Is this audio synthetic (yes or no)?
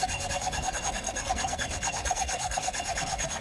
yes